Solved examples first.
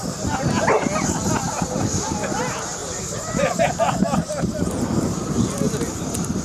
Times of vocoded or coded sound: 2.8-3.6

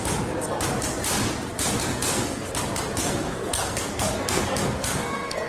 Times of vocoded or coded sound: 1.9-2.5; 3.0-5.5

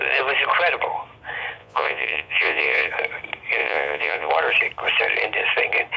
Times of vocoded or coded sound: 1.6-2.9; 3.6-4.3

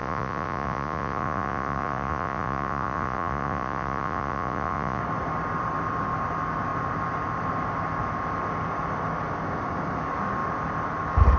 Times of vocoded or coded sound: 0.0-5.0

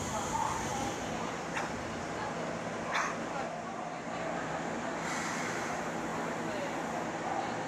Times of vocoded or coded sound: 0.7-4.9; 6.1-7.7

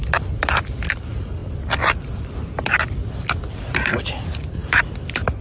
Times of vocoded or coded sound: none

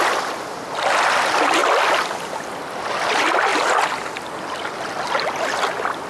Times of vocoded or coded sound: none